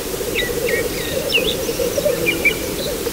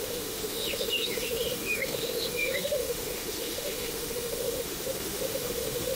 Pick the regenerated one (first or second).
second